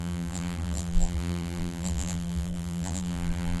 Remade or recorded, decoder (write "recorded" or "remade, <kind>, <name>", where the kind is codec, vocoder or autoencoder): remade, vocoder, BigVGAN v2